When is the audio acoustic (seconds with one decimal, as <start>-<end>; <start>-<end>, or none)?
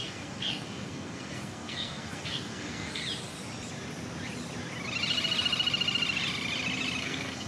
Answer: 3.0-7.0